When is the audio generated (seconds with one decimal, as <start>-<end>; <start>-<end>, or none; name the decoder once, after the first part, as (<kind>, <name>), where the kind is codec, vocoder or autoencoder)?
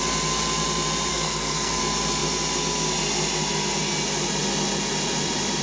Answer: 1.1-1.8 (codec, SNAC)